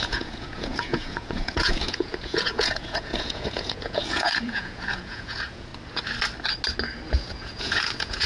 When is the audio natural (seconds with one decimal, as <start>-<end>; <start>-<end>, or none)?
5.7-7.1

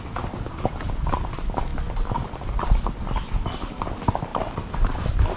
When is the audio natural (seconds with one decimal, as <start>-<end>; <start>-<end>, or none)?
0.0-5.4

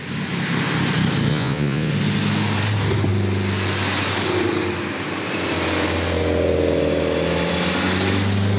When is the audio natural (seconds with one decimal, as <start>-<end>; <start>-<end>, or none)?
0.0-1.3; 1.9-8.6

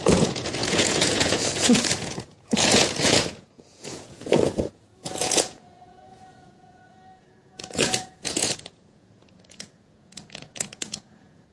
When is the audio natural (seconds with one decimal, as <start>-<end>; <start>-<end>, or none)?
none

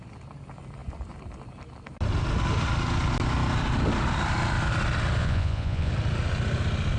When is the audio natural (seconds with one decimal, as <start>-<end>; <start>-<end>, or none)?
0.0-5.2; 5.9-7.0